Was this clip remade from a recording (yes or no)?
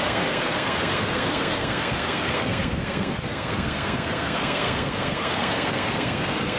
yes